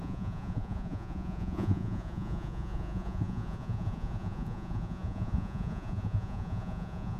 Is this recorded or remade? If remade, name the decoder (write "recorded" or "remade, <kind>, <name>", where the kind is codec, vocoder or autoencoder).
remade, vocoder, Vocos